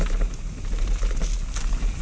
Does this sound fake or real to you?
real